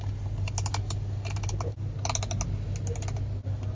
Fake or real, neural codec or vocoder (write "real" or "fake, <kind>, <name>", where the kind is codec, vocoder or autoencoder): real